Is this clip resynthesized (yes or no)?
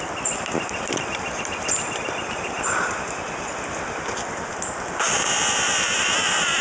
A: yes